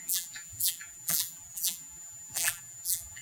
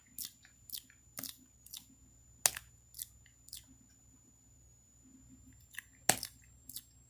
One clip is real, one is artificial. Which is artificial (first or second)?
first